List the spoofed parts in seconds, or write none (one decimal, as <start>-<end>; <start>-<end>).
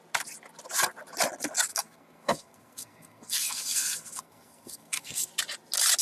1.7-5.3